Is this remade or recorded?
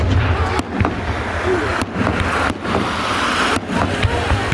recorded